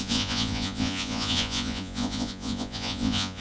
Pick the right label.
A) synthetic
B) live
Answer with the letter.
A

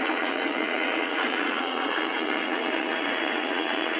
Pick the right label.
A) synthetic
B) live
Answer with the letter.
A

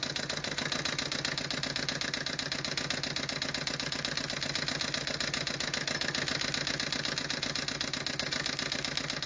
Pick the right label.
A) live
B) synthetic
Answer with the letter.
A